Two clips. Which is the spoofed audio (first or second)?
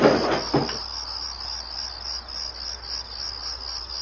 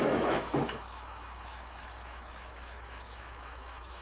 second